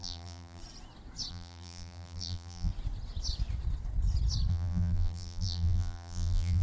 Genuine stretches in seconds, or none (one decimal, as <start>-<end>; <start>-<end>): 0.6-1.3; 2.7-4.5